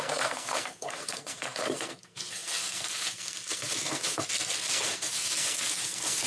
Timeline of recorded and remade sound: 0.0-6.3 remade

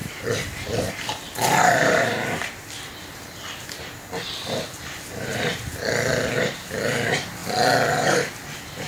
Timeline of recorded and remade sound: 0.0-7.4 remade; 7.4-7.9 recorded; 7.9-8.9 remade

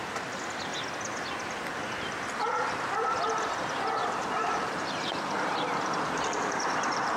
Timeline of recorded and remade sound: 0.0-4.0 recorded; 4.0-7.2 remade